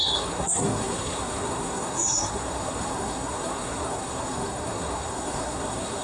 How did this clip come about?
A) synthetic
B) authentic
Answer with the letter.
A